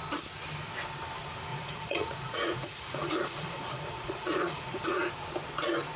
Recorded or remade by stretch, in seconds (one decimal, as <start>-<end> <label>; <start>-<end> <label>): 0.0-1.5 recorded; 1.5-5.1 remade; 5.1-6.0 recorded

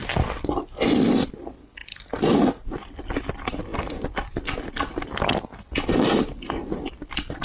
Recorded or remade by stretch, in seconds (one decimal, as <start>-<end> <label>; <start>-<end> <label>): 0.0-7.4 recorded

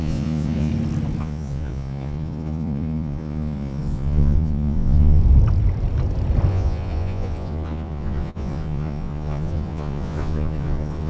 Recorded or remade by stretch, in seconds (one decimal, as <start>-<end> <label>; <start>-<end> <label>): 0.0-0.7 remade; 0.7-1.2 recorded; 1.2-5.2 remade; 5.2-6.5 recorded; 6.5-11.1 remade

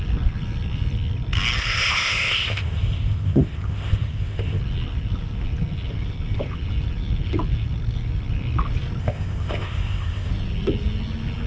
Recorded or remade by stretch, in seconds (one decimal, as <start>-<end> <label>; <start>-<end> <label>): 0.0-1.6 recorded; 1.6-4.6 remade; 4.6-9.0 recorded; 9.0-10.3 remade; 10.3-11.5 recorded

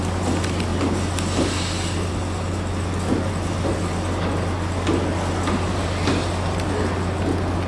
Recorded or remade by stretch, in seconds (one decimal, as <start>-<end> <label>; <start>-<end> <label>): 0.0-7.7 recorded

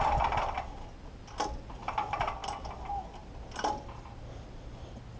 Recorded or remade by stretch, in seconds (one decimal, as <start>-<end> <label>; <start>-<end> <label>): 0.0-5.2 recorded

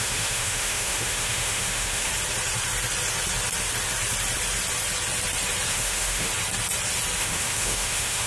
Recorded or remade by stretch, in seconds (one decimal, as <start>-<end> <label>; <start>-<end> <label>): 0.0-2.1 remade; 2.1-5.7 recorded; 5.7-6.3 remade; 6.3-7.2 recorded; 7.2-8.3 remade

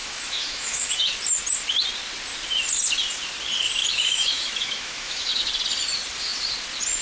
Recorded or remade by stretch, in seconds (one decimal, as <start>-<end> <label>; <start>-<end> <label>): 0.0-1.1 remade; 1.1-3.8 recorded; 3.8-5.5 remade; 5.5-7.0 recorded